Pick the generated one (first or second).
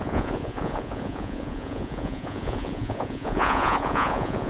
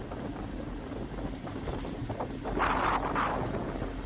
first